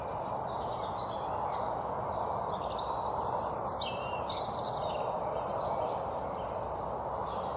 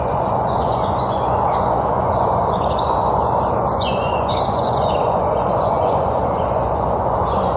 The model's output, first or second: second